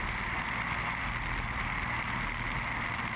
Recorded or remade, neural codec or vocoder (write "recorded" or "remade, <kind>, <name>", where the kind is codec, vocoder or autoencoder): recorded